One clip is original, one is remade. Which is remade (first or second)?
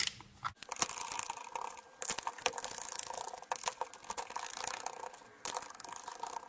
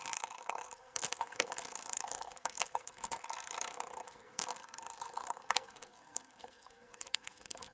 second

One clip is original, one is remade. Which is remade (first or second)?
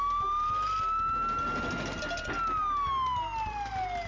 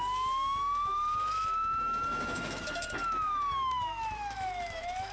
second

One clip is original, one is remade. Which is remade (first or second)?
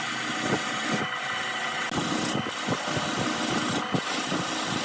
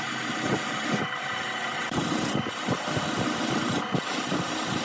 second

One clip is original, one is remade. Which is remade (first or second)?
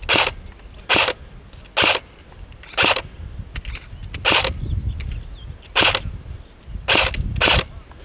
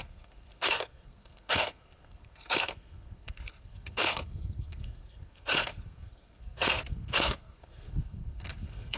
second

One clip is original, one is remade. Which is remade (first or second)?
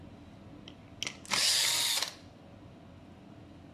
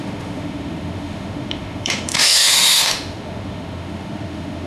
second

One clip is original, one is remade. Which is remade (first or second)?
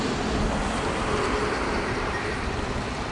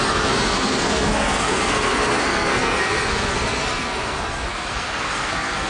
second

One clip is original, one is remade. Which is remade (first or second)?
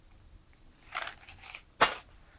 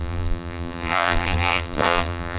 second